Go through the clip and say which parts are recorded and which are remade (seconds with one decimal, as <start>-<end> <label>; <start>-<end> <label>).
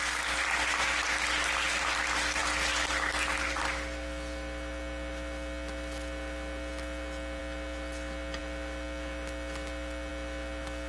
0.0-10.9 recorded